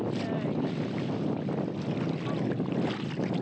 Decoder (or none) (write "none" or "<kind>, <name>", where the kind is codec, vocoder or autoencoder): none